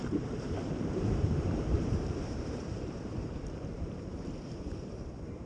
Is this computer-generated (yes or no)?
yes